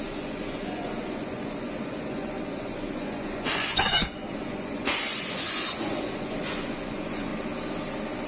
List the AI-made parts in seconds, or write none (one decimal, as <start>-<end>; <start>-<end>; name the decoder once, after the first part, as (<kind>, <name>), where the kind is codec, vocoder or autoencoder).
0.0-7.3 (vocoder, Vocos)